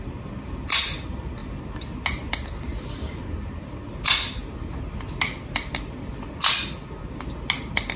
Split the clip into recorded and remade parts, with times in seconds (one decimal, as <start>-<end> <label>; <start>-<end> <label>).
0.0-8.0 recorded